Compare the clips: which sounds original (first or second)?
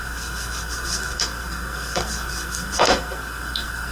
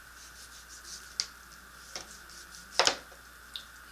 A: second